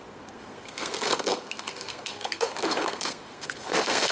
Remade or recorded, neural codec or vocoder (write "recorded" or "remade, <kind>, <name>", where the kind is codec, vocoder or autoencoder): remade, codec, SNAC